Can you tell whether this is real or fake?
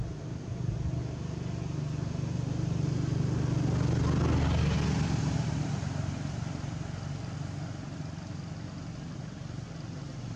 real